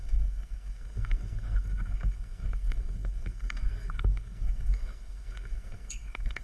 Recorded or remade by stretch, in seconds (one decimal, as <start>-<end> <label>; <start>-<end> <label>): 0.0-6.4 remade